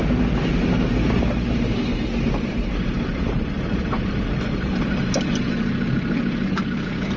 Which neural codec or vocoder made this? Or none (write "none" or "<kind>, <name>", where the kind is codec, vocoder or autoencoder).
none